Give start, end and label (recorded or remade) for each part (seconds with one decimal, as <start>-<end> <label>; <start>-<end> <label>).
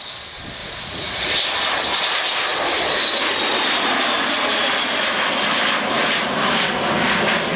0.0-0.6 recorded; 0.6-1.3 remade; 1.3-7.6 recorded